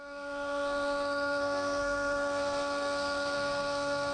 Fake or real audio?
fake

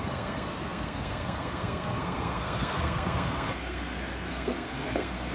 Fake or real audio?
fake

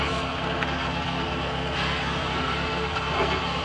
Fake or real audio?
fake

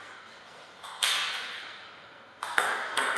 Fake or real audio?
fake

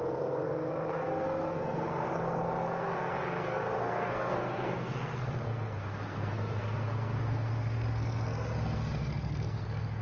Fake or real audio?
fake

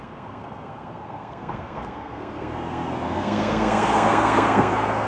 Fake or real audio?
fake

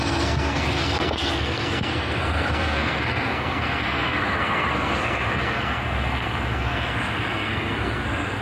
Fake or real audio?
fake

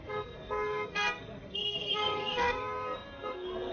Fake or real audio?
fake